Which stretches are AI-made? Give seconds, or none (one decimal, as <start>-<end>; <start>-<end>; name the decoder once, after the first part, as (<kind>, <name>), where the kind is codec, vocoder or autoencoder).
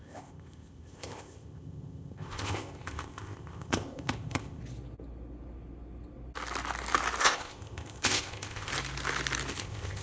0.0-4.6 (codec, ZipCodec); 7.2-8.7; 9.6-10.0